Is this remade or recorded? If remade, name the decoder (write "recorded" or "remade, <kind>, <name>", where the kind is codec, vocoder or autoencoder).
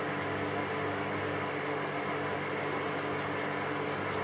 recorded